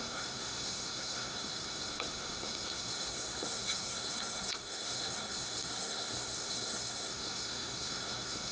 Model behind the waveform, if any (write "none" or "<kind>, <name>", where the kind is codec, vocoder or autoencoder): codec, SNAC